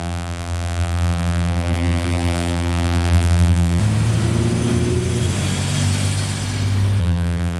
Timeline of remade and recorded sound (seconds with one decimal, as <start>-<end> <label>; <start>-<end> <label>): 0.0-3.8 remade; 3.8-7.0 recorded; 7.0-7.6 remade